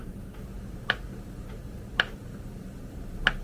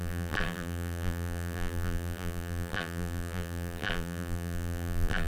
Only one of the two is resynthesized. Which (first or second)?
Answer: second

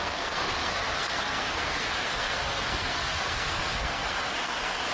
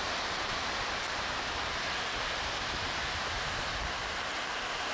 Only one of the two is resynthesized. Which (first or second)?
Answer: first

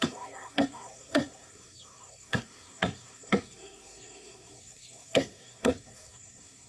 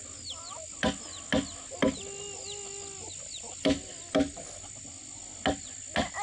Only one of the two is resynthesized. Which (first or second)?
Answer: first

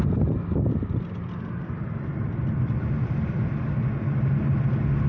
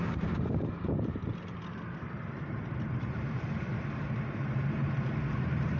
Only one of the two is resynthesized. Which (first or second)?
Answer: second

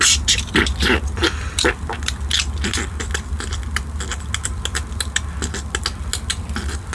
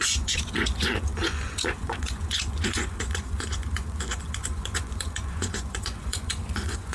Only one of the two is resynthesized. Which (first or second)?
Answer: second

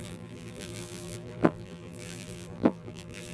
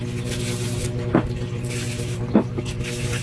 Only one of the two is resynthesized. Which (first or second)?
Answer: first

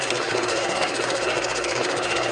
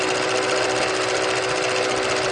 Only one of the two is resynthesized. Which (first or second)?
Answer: first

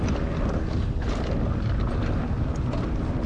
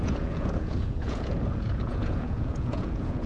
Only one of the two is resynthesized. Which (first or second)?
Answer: second